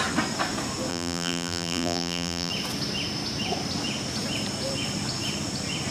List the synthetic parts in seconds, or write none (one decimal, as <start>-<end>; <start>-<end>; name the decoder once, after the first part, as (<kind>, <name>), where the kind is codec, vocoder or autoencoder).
0.9-2.5 (vocoder, BigVGAN v2)